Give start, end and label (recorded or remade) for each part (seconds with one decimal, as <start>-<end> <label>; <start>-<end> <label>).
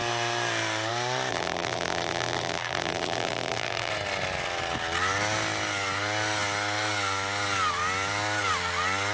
0.0-1.3 recorded; 1.3-3.9 remade; 3.9-9.1 recorded